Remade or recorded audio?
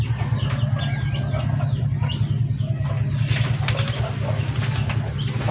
recorded